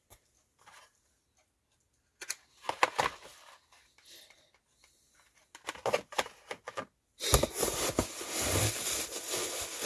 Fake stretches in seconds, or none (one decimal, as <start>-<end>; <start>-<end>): none